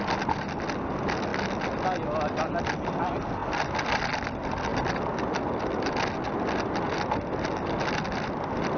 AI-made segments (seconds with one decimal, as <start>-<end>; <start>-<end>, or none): none